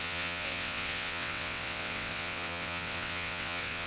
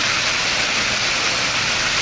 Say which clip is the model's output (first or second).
first